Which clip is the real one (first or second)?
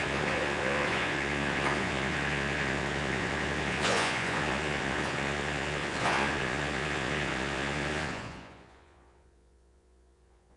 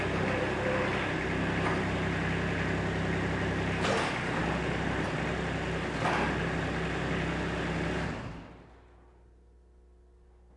second